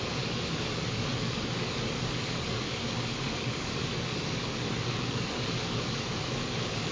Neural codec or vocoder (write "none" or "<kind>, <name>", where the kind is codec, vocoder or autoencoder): codec, DAC